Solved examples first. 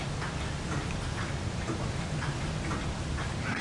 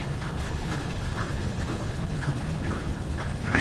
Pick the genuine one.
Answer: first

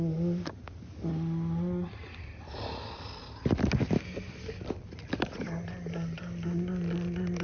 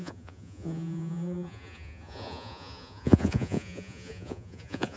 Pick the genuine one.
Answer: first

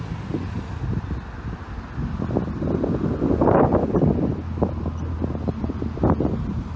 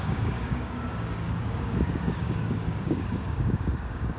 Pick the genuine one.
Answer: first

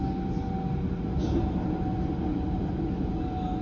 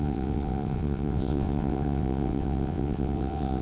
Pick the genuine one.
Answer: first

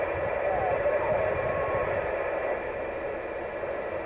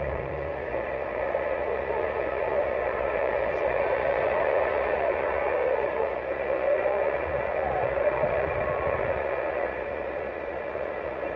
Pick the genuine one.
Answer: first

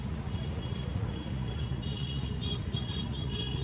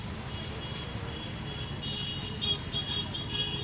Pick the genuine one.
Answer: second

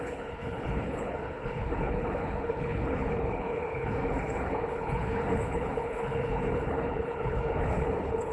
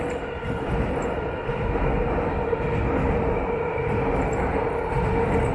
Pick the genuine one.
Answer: second